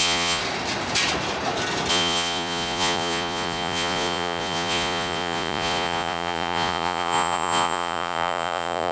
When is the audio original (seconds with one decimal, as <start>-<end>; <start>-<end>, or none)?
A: 0.4-1.9